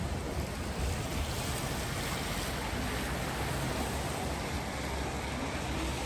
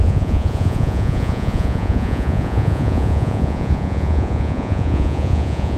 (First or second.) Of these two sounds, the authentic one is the first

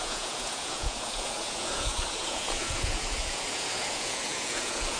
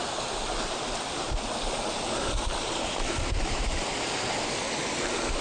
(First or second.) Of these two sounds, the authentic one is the second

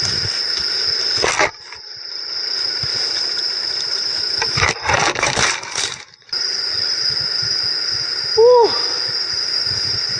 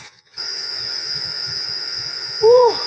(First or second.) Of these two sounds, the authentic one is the first